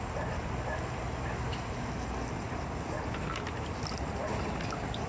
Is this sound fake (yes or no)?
no